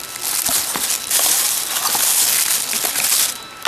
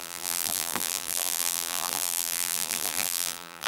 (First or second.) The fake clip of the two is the second